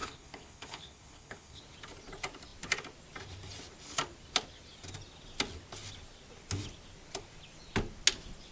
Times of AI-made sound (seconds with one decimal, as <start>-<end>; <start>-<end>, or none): 0.0-1.6